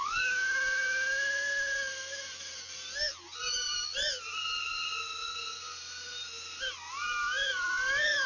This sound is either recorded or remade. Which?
recorded